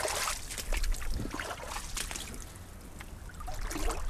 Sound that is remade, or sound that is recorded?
recorded